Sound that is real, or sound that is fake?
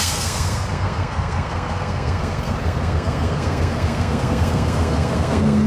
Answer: fake